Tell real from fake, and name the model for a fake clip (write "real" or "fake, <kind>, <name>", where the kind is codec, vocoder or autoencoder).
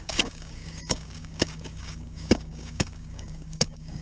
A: fake, codec, DAC